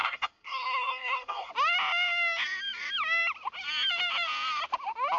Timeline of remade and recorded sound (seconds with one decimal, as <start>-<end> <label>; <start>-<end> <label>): 0.0-1.5 remade; 1.5-5.2 recorded